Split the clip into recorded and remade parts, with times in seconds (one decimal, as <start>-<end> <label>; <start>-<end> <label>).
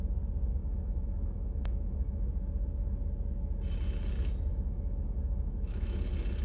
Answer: 0.0-0.6 recorded; 0.6-2.2 remade; 2.2-4.5 recorded; 4.5-6.0 remade; 6.0-6.4 recorded